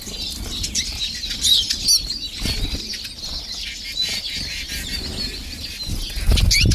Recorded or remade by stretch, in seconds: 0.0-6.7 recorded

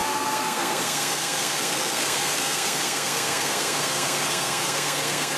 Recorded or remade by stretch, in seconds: 0.0-5.4 remade

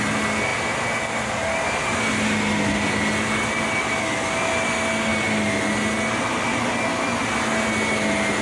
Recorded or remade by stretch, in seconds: 0.0-8.4 recorded

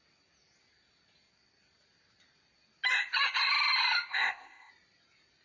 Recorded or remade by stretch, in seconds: 0.0-4.1 recorded; 4.1-4.7 remade; 4.7-5.4 recorded

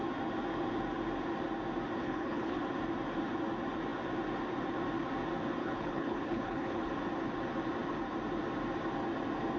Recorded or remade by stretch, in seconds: 0.0-2.0 recorded; 2.0-2.6 remade; 2.6-5.6 recorded; 5.6-6.9 remade; 6.9-9.6 recorded

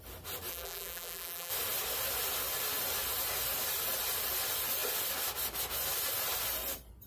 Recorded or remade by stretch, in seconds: 0.0-0.5 recorded; 0.5-1.5 remade; 1.5-7.1 recorded